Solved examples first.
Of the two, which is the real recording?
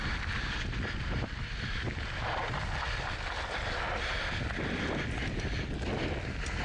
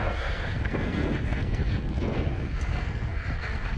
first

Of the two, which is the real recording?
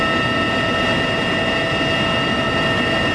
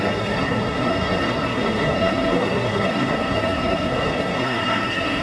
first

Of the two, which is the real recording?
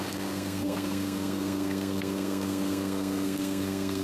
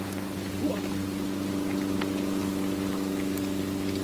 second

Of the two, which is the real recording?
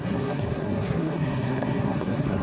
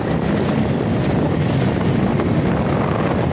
second